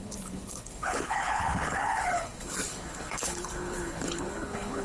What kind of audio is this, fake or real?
fake